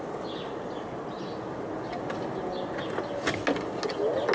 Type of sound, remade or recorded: recorded